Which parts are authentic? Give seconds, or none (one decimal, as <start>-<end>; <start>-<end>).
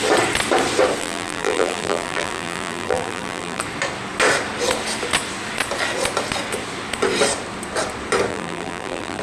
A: 0.0-1.0; 3.6-8.3